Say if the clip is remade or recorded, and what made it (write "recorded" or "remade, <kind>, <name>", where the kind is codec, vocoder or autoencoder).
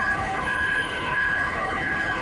remade, codec, HILCodec